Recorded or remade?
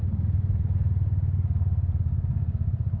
recorded